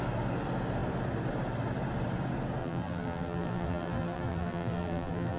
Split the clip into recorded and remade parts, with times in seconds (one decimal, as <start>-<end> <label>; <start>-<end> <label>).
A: 0.0-2.6 recorded; 2.6-5.4 remade